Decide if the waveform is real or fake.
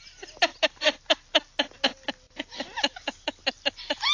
real